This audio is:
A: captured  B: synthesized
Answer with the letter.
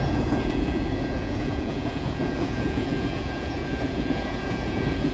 B